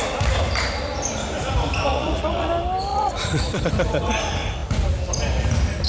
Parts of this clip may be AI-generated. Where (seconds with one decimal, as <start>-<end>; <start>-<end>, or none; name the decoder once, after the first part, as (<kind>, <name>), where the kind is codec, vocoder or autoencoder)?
1.9-2.5 (vocoder, Vocos); 2.9-3.6